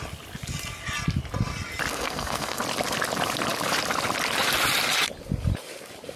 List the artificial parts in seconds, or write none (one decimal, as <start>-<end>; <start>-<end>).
1.9-2.6